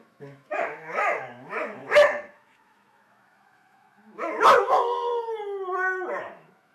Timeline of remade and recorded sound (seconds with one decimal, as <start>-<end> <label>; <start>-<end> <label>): 0.0-5.1 remade; 5.1-6.2 recorded; 6.2-6.7 remade